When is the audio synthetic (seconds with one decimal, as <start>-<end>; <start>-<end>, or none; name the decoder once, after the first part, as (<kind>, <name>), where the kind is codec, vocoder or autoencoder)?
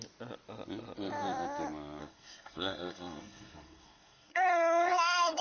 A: 2.0-5.4 (codec, SNAC)